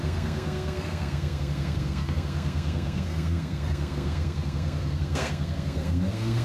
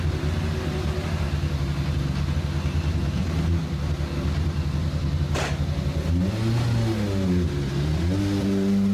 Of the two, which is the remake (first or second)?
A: first